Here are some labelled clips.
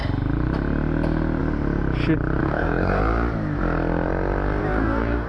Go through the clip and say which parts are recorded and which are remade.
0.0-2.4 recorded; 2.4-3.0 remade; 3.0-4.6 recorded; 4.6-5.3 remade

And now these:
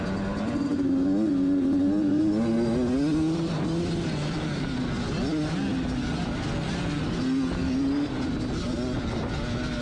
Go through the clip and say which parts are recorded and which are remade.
0.0-9.8 recorded

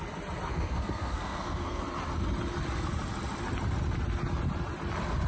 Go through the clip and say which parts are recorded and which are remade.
0.0-0.5 recorded; 0.5-1.8 remade; 1.8-5.3 recorded

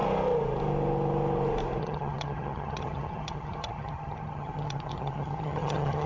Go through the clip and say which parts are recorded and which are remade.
0.0-1.8 recorded; 1.8-6.1 remade

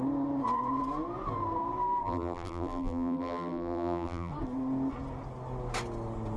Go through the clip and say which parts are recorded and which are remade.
0.0-2.0 recorded; 2.0-4.3 remade; 4.3-6.4 recorded

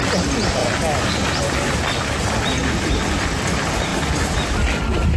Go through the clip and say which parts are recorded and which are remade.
0.0-5.2 recorded

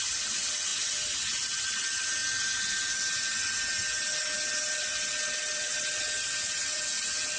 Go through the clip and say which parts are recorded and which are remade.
0.0-7.4 recorded

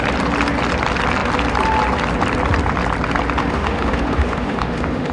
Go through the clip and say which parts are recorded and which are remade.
0.0-3.4 recorded; 3.4-5.1 remade